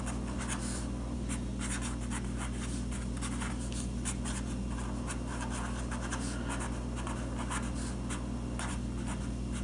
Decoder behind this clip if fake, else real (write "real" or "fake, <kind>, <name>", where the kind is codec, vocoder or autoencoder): real